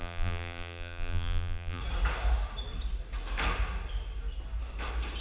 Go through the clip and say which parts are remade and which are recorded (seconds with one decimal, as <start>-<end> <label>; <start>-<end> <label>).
0.0-1.8 remade; 1.8-5.2 recorded